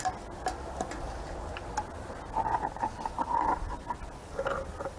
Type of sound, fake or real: real